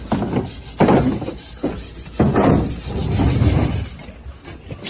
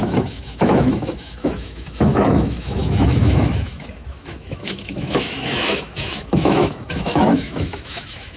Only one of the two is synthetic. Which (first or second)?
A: second